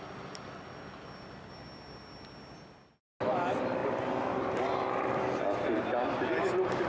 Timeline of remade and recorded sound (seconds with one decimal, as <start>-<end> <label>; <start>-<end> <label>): 0.0-6.9 recorded